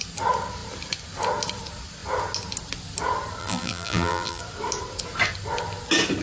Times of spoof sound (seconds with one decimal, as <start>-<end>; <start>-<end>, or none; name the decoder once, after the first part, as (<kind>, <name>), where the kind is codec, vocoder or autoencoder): 3.4-4.4 (vocoder, BigVGAN v2)